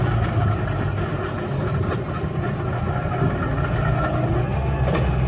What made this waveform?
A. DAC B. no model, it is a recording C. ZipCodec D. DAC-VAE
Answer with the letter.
B